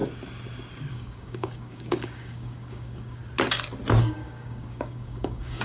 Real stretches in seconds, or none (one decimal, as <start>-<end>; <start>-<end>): 0.0-0.9; 3.2-4.0